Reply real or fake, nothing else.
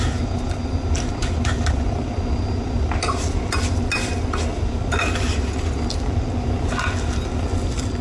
real